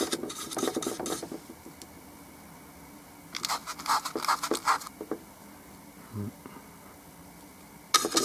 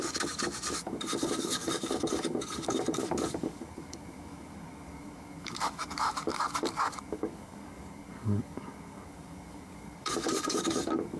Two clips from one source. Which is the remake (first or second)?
second